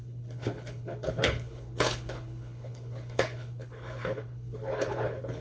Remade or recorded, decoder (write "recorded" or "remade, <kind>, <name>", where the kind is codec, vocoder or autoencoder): remade, codec, HILCodec